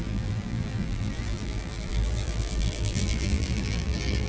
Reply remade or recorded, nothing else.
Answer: remade